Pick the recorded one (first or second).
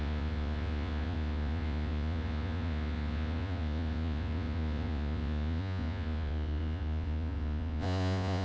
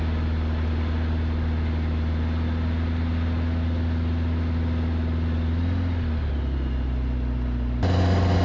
second